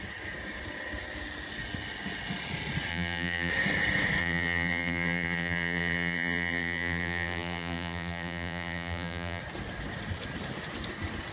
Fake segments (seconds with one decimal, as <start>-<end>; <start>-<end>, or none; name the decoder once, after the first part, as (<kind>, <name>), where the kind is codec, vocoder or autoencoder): 2.9-3.5 (vocoder, BigVGAN v2); 4.2-9.4